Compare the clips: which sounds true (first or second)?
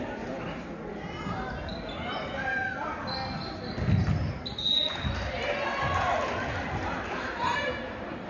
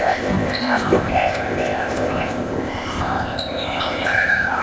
first